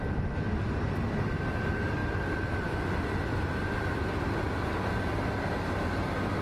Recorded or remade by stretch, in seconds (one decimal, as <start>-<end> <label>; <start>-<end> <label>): 0.0-6.4 recorded